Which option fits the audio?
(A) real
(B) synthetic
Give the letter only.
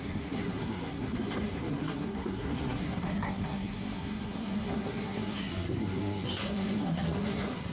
B